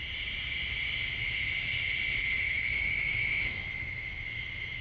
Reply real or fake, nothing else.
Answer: real